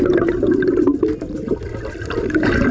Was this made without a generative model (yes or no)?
yes